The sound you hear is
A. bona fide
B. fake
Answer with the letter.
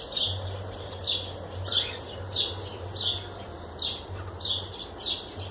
A